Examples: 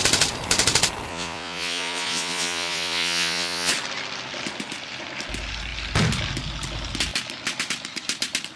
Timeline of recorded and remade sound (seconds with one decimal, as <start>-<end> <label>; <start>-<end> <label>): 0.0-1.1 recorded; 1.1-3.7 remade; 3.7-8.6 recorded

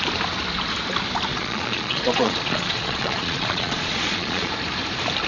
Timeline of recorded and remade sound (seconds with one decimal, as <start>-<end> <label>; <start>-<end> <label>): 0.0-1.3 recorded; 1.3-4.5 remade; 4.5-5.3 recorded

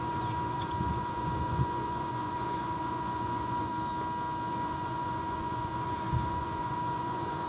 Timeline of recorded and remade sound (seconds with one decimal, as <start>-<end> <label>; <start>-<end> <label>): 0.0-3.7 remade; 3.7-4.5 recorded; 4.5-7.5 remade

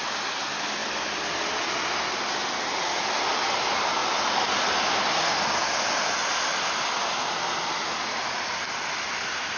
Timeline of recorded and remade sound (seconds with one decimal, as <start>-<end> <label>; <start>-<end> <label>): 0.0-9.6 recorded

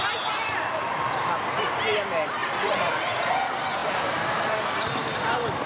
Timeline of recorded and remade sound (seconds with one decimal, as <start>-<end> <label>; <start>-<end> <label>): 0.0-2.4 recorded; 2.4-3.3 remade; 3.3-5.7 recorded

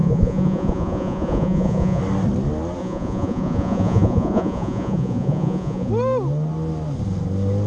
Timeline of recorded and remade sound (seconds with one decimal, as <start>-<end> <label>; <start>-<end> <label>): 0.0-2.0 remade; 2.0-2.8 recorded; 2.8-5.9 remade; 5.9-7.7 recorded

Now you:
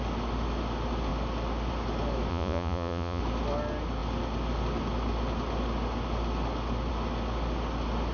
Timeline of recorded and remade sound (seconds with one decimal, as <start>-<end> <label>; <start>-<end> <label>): 0.0-2.3 recorded; 2.3-3.2 remade; 3.2-8.1 recorded